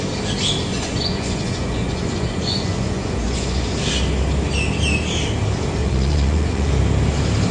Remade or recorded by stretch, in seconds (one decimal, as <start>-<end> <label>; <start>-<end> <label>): 0.0-0.7 recorded; 0.7-3.7 remade; 3.7-5.8 recorded; 5.8-6.7 remade; 6.7-7.5 recorded